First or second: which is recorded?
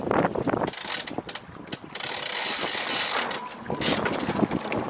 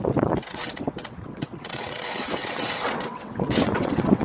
first